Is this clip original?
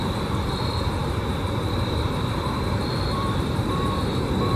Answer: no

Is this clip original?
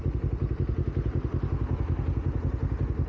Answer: yes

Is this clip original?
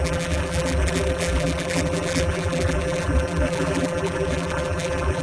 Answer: no